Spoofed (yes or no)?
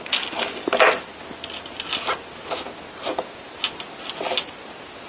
no